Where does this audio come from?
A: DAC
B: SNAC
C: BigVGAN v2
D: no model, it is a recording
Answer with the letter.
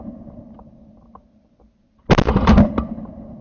D